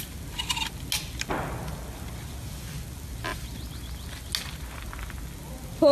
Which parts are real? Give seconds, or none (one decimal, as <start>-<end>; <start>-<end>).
0.0-5.9